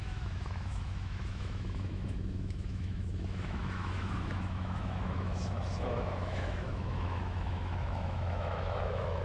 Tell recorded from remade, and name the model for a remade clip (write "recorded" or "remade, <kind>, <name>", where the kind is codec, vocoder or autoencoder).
remade, autoencoder, DAC-VAE